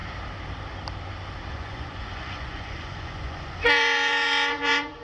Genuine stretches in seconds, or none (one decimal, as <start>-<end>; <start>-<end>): 0.0-1.5